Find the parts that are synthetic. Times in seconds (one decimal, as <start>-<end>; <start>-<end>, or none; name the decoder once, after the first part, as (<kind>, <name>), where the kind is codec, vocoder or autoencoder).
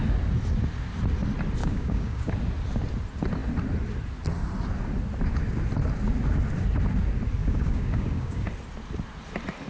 1.6-2.3 (codec, DAC); 7.4-8.5